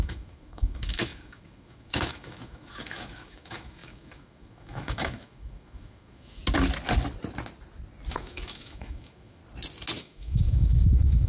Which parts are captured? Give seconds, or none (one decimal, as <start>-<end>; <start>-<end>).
6.4-8.1; 9.4-10.0